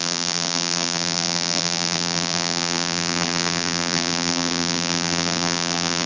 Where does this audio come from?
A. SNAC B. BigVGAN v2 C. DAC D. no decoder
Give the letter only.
B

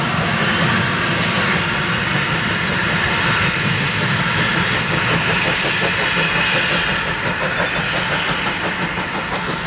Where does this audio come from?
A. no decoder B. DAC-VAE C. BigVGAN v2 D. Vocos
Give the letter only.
A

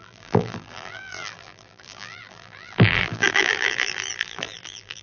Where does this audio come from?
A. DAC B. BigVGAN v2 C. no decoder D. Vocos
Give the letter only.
B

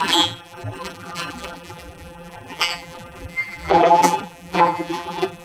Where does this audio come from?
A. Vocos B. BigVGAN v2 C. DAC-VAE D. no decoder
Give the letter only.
B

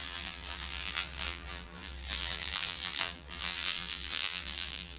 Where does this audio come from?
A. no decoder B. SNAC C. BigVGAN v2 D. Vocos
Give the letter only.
C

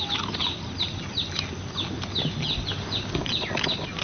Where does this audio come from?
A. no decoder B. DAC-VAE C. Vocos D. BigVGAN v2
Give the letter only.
A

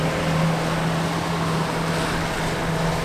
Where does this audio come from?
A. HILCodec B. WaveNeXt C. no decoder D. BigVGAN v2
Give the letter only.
C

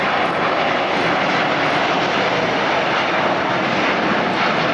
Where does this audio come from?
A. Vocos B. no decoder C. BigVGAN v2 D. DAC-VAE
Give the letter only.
B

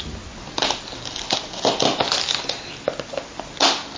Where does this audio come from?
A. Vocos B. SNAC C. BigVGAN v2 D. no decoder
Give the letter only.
D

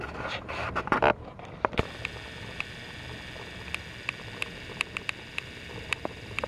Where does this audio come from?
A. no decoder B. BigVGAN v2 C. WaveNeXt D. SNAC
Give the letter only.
B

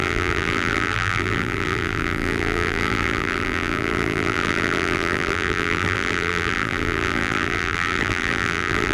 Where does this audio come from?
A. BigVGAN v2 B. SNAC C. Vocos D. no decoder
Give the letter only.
A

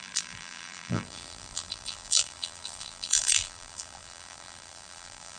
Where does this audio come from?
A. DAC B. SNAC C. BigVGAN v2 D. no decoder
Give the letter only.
C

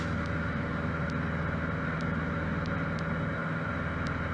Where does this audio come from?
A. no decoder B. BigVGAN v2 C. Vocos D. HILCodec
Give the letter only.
A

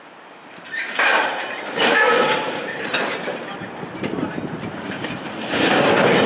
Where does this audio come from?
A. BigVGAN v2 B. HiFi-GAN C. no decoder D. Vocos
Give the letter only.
A